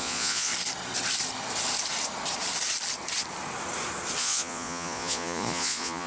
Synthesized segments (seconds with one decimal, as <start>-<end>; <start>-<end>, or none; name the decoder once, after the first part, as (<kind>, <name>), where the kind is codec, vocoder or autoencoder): 0.0-0.5 (vocoder, Vocos); 4.2-6.1